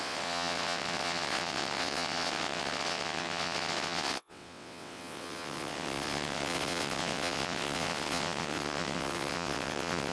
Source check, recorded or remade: remade